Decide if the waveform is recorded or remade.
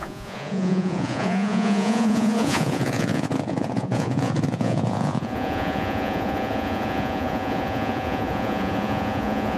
remade